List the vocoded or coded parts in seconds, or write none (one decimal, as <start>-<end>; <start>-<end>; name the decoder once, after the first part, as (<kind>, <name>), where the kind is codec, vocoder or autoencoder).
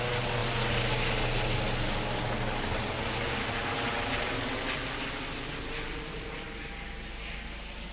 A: none